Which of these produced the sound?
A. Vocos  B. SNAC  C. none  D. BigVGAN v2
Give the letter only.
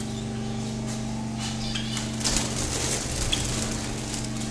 C